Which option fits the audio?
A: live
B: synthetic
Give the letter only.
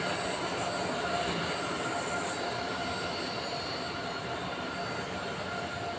A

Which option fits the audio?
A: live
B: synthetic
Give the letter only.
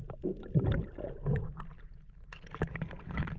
A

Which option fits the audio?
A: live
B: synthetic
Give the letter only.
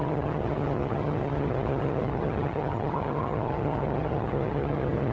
B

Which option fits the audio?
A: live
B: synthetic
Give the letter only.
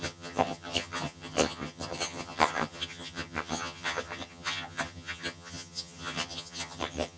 B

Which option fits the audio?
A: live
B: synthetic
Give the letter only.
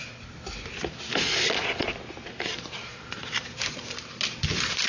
A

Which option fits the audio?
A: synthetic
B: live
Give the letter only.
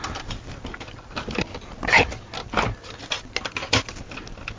B